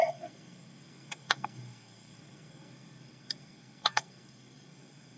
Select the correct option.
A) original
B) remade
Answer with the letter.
B